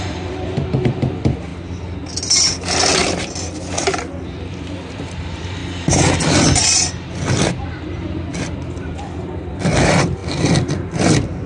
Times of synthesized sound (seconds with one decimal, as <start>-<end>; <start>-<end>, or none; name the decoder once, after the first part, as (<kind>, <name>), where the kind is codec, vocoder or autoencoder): 0.0-1.5 (vocoder, BigVGAN v2); 4.5-5.6; 6.2-10.2; 10.7-11.5